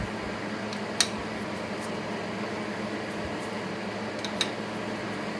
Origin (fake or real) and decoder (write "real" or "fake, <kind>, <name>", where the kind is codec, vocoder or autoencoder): real